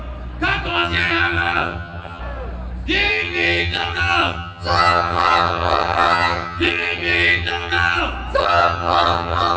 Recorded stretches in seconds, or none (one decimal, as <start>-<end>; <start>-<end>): 0.0-0.7; 2.2-3.1; 8.0-8.4